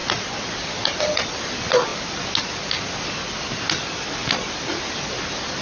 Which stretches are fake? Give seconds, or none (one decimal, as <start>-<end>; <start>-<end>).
none